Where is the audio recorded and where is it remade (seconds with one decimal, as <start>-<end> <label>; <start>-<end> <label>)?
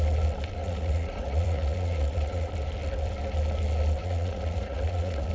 0.0-0.6 recorded; 0.6-2.5 remade; 2.5-4.0 recorded; 4.0-5.3 remade